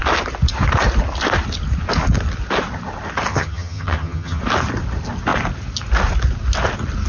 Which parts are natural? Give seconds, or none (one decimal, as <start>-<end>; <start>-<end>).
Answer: 0.0-3.3; 4.4-7.1